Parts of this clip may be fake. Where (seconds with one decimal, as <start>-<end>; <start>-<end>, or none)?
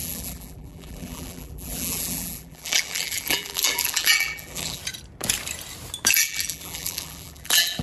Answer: 0.0-4.8; 6.1-7.8